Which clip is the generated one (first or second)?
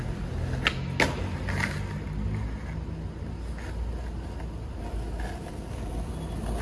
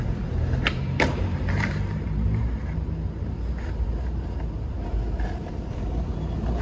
second